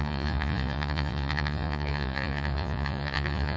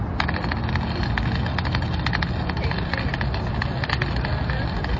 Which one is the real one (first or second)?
second